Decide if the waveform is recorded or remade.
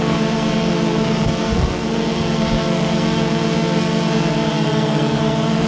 remade